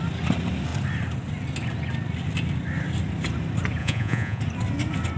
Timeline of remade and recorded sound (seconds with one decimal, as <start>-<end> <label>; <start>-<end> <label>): 0.0-3.8 recorded; 3.8-4.4 remade; 4.4-5.2 recorded